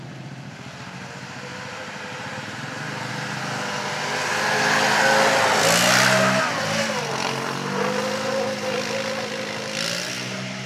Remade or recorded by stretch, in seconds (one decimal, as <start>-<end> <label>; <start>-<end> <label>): 0.0-1.5 recorded; 1.5-3.1 remade; 3.1-10.7 recorded